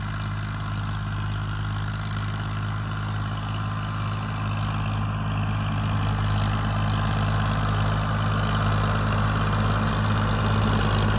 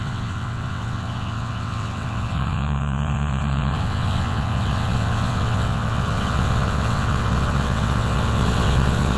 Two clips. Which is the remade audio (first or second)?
second